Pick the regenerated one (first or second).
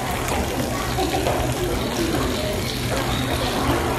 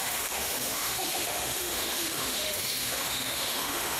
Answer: second